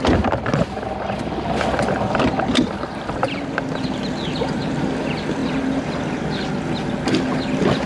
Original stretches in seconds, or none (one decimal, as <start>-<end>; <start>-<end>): 0.0-7.9